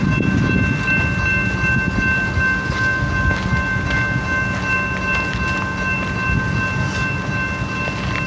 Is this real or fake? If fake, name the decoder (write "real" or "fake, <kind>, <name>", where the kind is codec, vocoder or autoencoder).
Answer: real